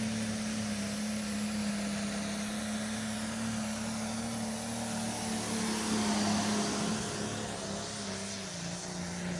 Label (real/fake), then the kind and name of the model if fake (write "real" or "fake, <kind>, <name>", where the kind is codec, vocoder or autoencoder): real